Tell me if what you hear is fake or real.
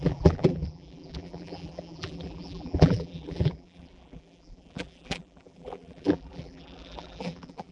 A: fake